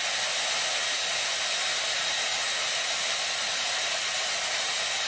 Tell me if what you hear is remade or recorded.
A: recorded